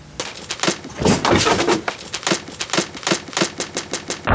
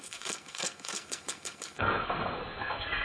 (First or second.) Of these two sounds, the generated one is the second